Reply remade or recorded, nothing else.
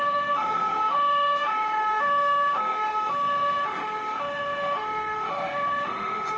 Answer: remade